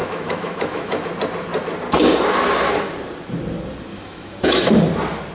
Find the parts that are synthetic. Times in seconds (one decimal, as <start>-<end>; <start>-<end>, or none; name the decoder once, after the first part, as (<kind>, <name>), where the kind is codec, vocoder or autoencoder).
0.0-1.1 (autoencoder, DAC-VAE); 3.9-4.8